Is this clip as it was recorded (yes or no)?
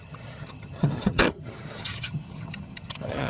no